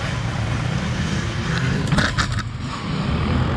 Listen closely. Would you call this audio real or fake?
real